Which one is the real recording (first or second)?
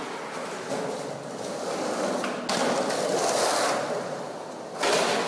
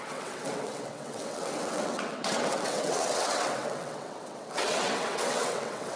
first